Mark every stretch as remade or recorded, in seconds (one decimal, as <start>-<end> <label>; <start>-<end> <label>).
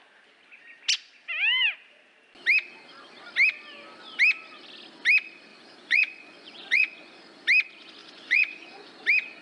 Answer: 0.0-5.5 recorded; 5.5-7.2 remade; 7.2-8.0 recorded; 8.0-8.9 remade; 8.9-9.4 recorded